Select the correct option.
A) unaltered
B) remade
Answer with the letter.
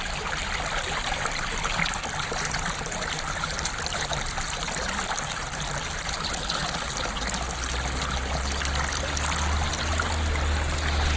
A